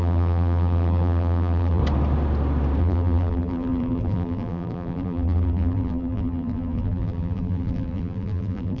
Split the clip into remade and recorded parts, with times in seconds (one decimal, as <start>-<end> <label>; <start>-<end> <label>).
0.0-1.8 remade; 1.8-2.8 recorded; 2.8-8.8 remade